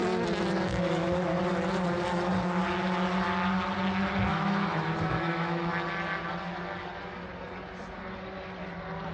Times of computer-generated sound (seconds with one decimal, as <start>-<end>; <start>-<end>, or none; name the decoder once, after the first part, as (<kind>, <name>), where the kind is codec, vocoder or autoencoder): 4.3-5.7 (autoencoder, DAC-VAE)